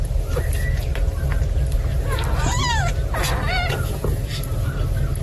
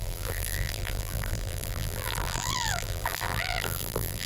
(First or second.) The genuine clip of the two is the first